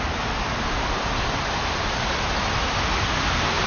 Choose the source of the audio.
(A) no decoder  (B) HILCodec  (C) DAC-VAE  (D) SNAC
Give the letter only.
A